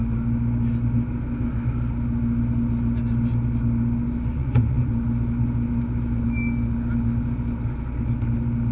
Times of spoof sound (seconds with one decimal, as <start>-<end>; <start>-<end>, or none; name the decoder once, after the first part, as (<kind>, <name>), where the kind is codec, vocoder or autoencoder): 4.3-4.9 (vocoder, Vocos)